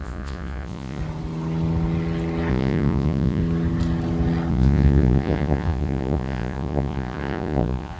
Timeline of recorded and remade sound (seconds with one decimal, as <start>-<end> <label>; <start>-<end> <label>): 0.0-1.0 remade; 1.0-2.5 recorded; 2.5-3.4 remade; 3.4-4.5 recorded; 4.5-8.0 remade